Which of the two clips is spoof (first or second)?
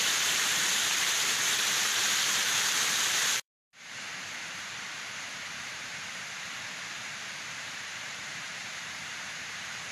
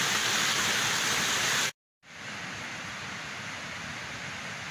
first